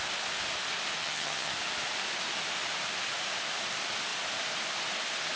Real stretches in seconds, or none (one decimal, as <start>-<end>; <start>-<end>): 0.0-1.0; 1.5-5.4